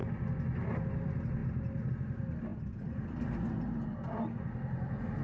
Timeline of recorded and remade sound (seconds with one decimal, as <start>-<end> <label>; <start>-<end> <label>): 0.0-2.5 recorded; 2.5-3.6 remade; 3.6-5.2 recorded